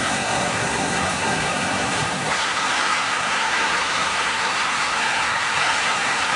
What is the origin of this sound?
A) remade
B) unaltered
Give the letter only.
A